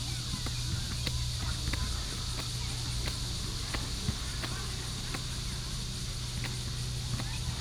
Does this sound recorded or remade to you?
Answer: recorded